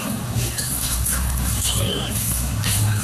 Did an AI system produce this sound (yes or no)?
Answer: yes